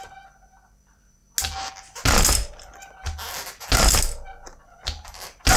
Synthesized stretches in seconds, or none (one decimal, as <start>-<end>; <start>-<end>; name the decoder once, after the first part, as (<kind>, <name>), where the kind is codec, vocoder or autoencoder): none